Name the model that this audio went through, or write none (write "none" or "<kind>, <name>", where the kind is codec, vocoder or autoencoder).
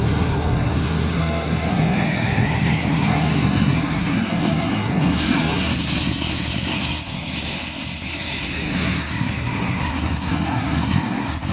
codec, SNAC